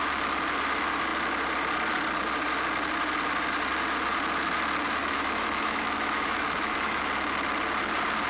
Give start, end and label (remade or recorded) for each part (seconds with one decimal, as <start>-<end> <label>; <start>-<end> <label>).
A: 0.0-5.0 recorded; 5.0-7.0 remade; 7.0-8.3 recorded